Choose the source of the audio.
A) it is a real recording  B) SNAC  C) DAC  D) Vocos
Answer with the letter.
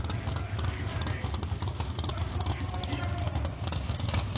C